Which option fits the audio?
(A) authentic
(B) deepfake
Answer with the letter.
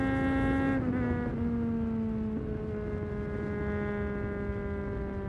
A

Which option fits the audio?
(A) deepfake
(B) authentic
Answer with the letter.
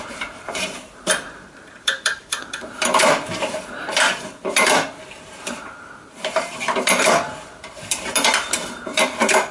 A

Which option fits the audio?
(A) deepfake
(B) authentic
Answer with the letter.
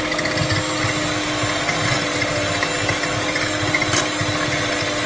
B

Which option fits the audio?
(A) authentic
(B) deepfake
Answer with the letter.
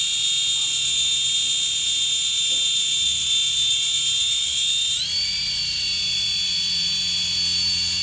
A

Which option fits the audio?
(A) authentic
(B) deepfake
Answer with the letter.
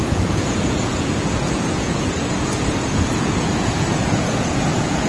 B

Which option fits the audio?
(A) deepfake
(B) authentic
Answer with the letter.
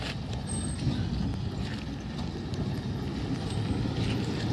B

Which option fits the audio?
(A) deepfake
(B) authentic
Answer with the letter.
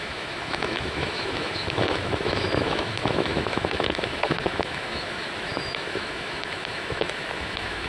A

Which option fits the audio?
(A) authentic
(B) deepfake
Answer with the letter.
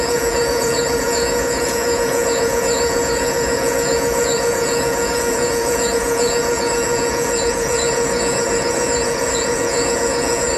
B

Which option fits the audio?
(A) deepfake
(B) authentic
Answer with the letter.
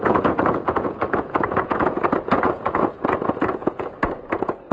A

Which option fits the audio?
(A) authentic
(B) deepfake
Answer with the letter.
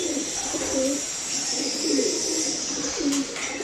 B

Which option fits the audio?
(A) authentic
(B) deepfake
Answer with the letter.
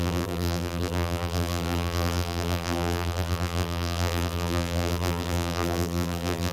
B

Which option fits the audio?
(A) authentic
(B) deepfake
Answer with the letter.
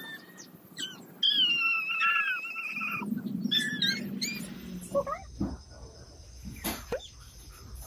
A